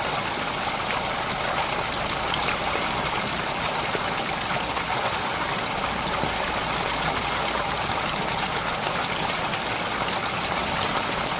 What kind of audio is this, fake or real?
real